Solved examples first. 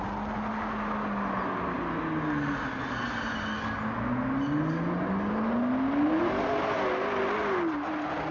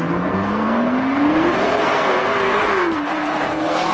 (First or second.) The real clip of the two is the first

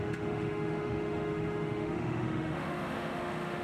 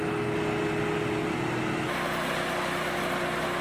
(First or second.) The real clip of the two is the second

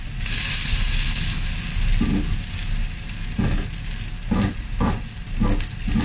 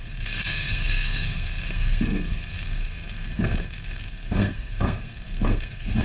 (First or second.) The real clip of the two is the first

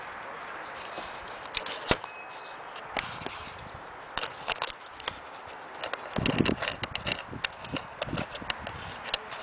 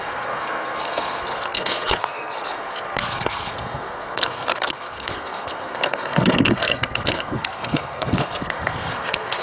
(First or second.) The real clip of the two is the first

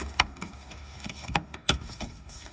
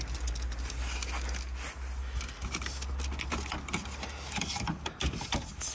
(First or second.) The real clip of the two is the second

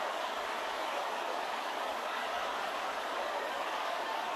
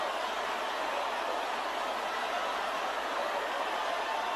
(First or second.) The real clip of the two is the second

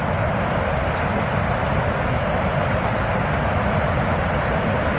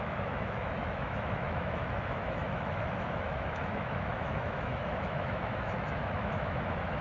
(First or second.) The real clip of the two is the first